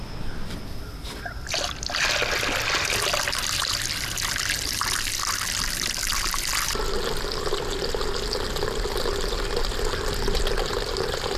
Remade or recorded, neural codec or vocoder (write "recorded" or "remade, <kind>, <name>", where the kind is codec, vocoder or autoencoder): recorded